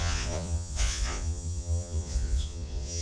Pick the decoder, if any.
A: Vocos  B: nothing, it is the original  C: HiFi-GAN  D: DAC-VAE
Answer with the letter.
A